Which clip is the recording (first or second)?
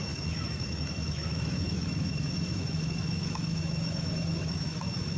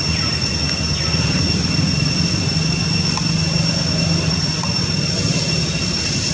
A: second